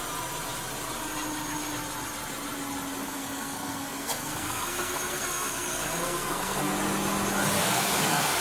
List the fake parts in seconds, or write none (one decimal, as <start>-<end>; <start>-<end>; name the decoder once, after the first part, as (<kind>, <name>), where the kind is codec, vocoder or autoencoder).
3.0-6.7 (codec, SNAC); 7.6-8.4